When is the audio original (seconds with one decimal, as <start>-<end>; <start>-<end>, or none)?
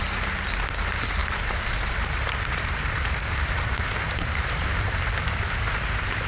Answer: 0.0-1.2; 5.0-6.3